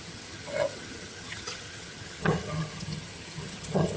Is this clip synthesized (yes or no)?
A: yes